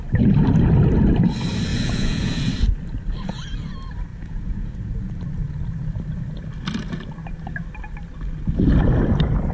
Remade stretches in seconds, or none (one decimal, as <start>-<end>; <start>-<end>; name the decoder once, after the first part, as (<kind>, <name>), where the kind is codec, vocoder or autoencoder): 1.7-2.5 (vocoder, Vocos); 4.1-5.2